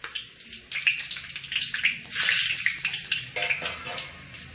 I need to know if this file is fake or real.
real